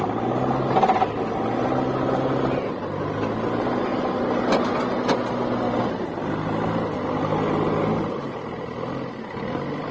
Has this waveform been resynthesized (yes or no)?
no